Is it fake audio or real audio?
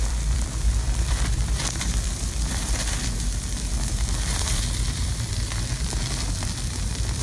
fake